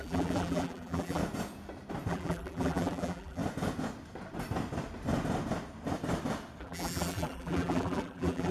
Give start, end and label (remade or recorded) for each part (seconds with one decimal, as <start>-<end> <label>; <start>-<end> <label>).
0.0-1.2 remade; 1.2-2.1 recorded; 2.1-3.4 remade; 3.4-6.6 recorded; 6.6-8.5 remade

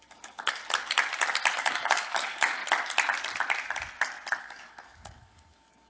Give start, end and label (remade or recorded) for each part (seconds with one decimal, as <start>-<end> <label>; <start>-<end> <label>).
0.0-0.6 remade; 0.6-1.6 recorded; 1.6-2.6 remade; 2.6-4.4 recorded; 4.4-5.9 remade

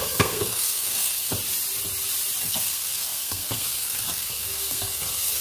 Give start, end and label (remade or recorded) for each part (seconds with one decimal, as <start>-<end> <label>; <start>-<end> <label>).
0.0-1.3 remade; 1.3-2.4 recorded; 2.4-5.4 remade